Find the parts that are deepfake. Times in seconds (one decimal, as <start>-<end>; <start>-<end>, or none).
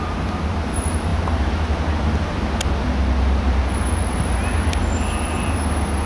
none